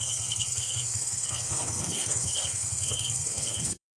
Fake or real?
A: fake